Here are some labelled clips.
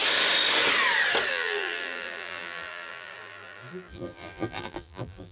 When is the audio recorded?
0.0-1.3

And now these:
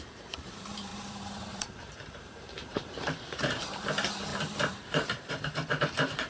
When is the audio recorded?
none

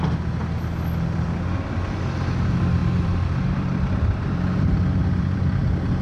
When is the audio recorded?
0.0-2.8

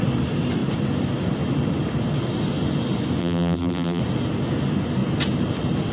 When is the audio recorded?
0.0-3.2; 4.0-5.9

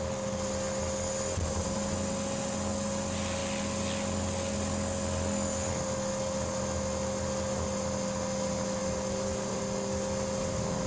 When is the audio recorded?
0.0-8.8; 9.6-10.9